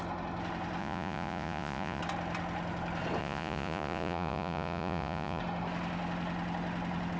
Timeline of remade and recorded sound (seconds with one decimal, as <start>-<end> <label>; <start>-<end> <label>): 0.0-0.8 recorded; 0.8-2.0 remade; 2.0-3.2 recorded; 3.2-5.4 remade; 5.4-7.2 recorded